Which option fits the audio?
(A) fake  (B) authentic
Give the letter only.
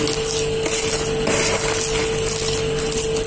B